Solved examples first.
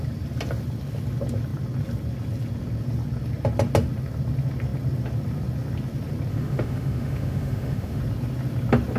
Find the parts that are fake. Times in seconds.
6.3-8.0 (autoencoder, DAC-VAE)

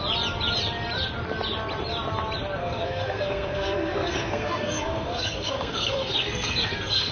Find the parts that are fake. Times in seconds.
2.6-7.1 (codec, SNAC)

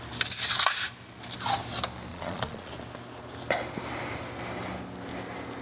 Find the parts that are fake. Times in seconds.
2.1-2.7 (vocoder, Vocos)

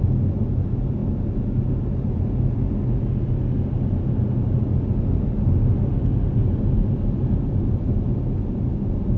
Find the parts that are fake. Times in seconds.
none